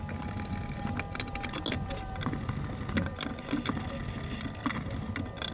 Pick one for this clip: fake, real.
real